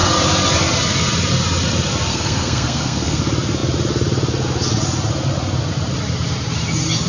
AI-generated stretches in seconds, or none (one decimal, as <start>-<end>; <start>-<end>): 2.1-3.2